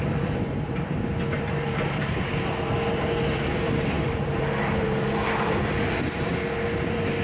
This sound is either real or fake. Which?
fake